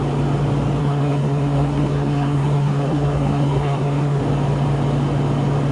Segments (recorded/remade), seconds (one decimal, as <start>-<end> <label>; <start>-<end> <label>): 0.0-0.8 recorded; 0.8-4.2 remade; 4.2-5.7 recorded